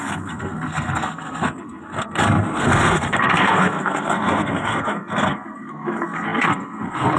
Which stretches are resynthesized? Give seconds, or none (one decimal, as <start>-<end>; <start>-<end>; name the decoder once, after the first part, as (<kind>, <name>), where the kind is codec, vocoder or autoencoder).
0.0-7.2 (codec, SNAC)